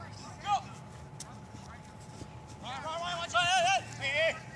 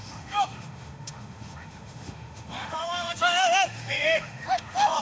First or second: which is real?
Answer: first